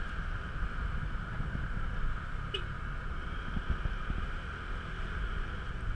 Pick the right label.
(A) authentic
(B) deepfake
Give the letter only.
A